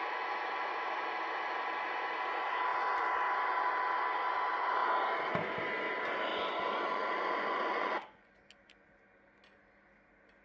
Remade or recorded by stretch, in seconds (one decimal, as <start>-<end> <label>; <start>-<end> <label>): 0.0-6.3 recorded; 6.3-8.3 remade; 8.3-10.4 recorded